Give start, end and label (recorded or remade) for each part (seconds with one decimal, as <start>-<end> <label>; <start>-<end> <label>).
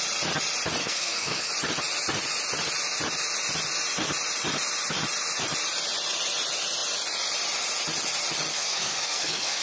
0.0-0.8 recorded; 0.8-1.5 remade; 1.5-8.5 recorded; 8.5-9.6 remade